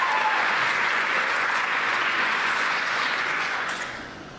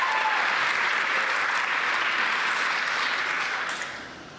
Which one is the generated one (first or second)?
first